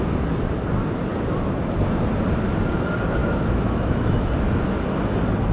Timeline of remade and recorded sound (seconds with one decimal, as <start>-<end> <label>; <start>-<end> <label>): 0.0-3.2 recorded; 3.2-4.3 remade; 4.3-5.5 recorded